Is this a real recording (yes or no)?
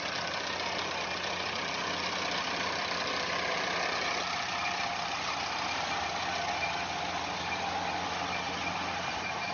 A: yes